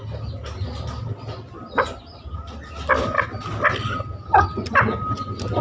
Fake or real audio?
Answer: real